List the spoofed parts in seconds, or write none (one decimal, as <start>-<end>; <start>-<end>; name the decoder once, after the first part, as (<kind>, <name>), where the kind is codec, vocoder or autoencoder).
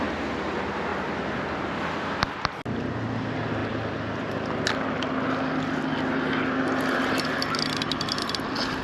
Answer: none